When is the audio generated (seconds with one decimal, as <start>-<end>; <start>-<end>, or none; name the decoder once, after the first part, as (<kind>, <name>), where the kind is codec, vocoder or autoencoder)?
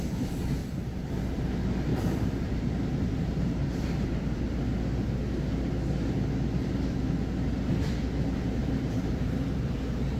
0.6-1.1 (vocoder, BigVGAN v2); 1.9-4.6; 8.6-10.2